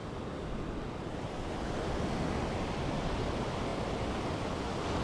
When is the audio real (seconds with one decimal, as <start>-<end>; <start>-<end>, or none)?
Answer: 0.0-5.0